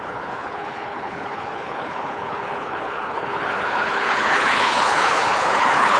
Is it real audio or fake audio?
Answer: fake